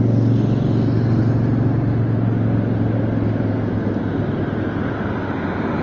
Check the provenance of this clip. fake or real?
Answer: real